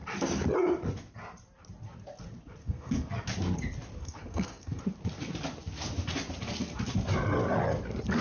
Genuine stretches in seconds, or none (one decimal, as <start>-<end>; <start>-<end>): 0.0-2.6; 3.1-4.0; 4.8-8.2